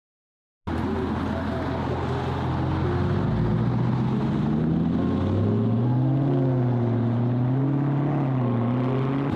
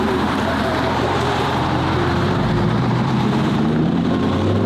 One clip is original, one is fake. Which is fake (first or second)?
second